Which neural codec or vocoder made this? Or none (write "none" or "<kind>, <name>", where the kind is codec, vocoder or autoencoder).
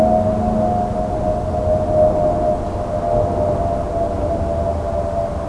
none